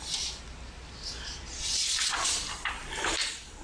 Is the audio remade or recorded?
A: recorded